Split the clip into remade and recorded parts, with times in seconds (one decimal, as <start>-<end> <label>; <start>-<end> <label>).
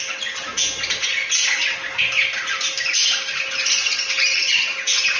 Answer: 0.0-5.2 recorded